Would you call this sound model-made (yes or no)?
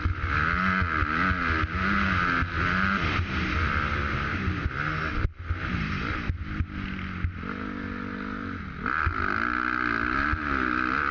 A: no